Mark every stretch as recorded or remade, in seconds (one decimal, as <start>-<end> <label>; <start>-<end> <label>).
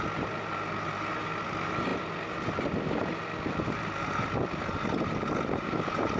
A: 0.0-6.2 recorded